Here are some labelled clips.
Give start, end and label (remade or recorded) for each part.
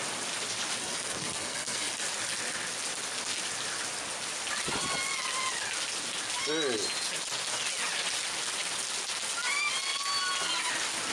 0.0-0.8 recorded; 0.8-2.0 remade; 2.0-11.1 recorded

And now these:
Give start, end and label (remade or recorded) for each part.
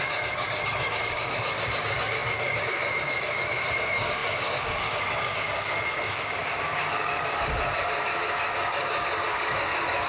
0.0-10.1 remade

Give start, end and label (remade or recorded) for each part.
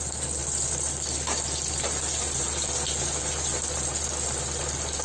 0.0-5.0 recorded